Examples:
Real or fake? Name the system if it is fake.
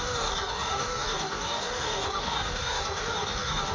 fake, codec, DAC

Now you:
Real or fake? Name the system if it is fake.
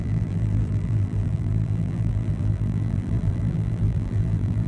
fake, vocoder, BigVGAN v2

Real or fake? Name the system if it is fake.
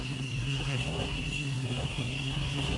fake, codec, SNAC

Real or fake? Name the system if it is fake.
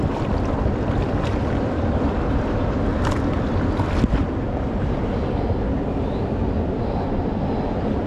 real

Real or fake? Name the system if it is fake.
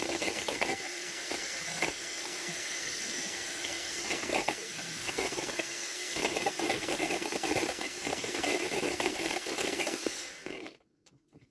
fake, codec, SNAC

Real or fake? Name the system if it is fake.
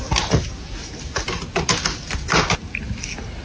real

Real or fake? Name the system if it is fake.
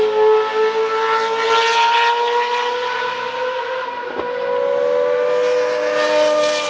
real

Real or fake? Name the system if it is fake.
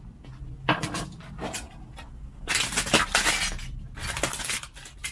real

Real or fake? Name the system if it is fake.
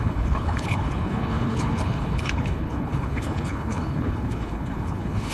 fake, codec, HILCodec